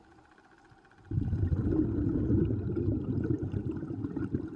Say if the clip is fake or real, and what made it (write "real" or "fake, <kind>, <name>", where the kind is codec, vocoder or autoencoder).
real